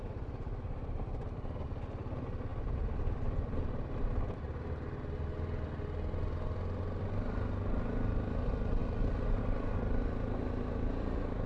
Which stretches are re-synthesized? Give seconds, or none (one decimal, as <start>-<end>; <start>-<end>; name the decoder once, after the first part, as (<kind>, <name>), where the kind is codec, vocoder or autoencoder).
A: none